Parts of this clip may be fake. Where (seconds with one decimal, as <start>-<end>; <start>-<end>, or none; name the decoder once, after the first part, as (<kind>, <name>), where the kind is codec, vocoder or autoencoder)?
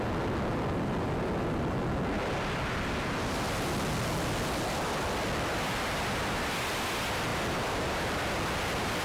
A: none